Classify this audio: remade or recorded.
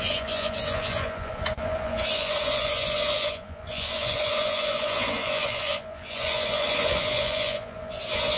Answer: remade